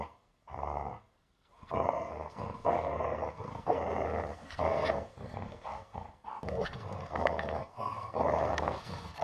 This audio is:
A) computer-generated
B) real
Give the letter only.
A